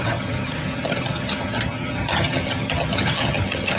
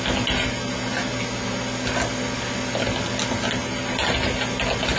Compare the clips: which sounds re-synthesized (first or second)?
first